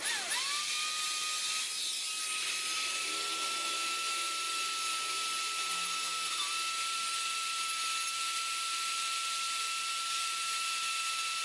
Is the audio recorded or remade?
recorded